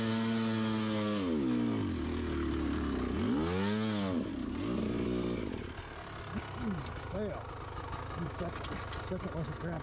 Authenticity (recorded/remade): recorded